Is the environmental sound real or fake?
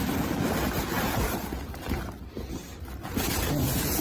real